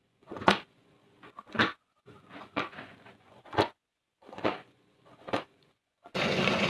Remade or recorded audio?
remade